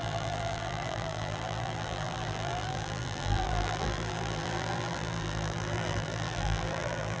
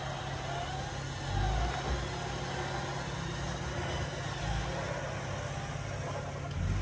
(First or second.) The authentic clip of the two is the second